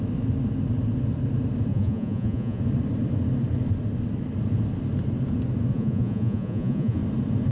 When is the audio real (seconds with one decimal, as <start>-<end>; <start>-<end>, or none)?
0.0-1.7; 2.6-5.7; 7.0-7.5